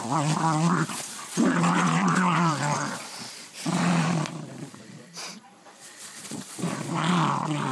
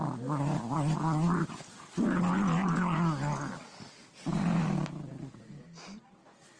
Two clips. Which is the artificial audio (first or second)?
first